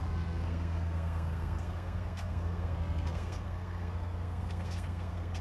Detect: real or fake fake